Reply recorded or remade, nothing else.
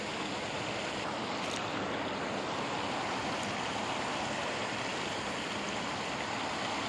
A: recorded